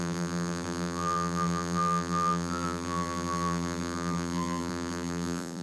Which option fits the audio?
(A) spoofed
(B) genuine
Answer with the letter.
A